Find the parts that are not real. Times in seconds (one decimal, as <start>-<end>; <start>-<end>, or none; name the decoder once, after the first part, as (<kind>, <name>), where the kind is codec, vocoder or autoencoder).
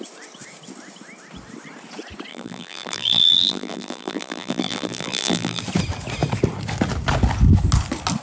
2.3-5.6 (vocoder, BigVGAN v2)